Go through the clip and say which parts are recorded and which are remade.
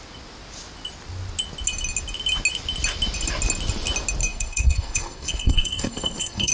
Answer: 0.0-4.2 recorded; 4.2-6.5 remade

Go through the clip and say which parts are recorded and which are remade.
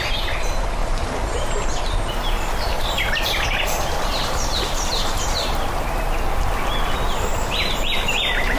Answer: 0.0-0.8 recorded; 0.8-1.8 remade; 1.8-4.2 recorded; 4.2-5.8 remade; 5.8-7.3 recorded; 7.3-8.6 remade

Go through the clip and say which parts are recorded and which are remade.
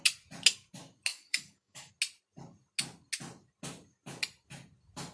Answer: 0.0-1.1 recorded; 1.1-1.9 remade; 1.9-5.1 recorded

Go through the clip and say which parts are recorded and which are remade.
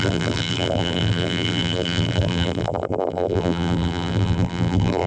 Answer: 0.0-5.1 remade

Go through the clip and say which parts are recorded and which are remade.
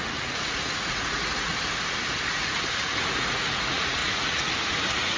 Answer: 0.0-1.5 remade; 1.5-2.3 recorded; 2.3-5.2 remade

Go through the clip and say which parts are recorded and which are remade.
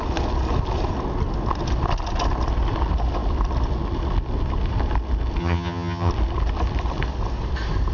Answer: 0.0-5.4 recorded; 5.4-6.1 remade; 6.1-7.9 recorded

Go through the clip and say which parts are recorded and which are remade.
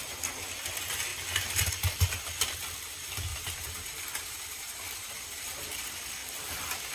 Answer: 0.0-3.3 recorded; 3.3-5.6 remade; 5.6-6.9 recorded